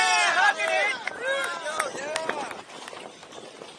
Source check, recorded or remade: remade